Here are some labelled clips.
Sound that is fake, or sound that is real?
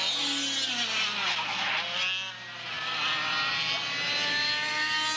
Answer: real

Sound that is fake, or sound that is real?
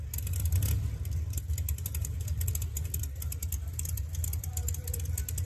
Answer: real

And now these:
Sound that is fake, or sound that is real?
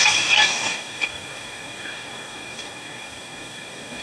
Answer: fake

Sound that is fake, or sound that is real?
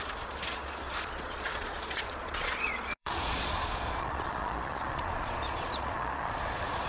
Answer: fake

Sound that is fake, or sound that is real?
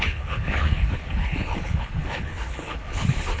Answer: fake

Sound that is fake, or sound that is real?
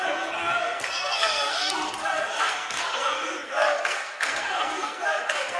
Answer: fake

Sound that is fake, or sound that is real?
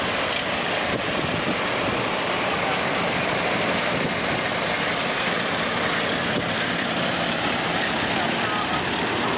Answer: real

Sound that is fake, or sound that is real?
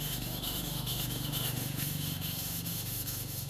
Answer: fake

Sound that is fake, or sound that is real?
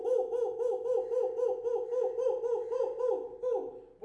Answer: real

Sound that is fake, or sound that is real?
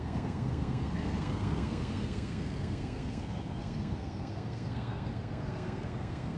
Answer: fake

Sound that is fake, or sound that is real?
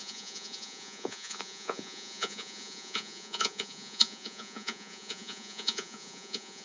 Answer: fake